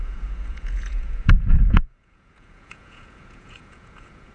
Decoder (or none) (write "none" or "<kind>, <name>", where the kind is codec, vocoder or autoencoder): vocoder, Vocos